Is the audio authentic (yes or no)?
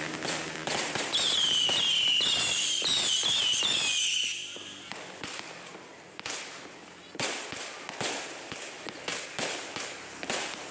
yes